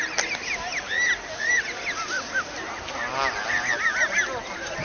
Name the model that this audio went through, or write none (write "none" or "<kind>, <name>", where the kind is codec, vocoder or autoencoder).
none